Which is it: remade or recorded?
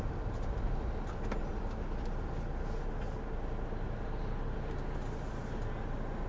recorded